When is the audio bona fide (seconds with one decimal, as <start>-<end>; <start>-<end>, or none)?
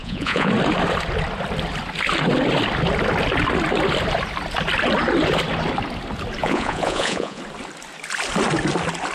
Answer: 0.5-6.4; 7.4-9.1